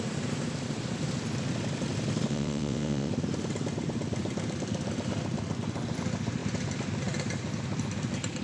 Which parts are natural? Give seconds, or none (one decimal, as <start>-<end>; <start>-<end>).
0.0-2.3; 3.1-8.4